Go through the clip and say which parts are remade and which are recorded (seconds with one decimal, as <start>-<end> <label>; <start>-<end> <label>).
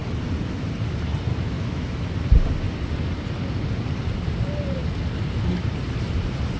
0.0-1.3 recorded; 1.3-2.1 remade; 2.1-6.6 recorded